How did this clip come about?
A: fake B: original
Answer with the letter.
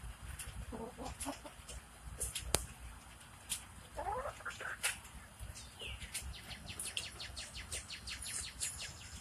B